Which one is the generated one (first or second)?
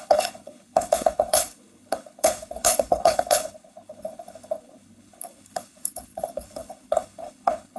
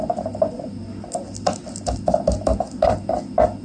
first